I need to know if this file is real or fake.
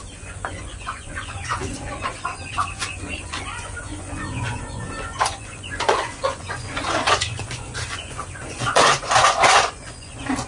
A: fake